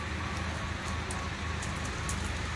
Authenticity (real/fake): real